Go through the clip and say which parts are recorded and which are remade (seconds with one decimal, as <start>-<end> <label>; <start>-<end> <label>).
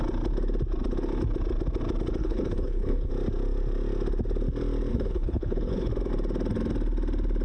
0.0-2.2 recorded; 2.2-3.1 remade; 3.1-4.9 recorded; 4.9-5.9 remade; 5.9-7.4 recorded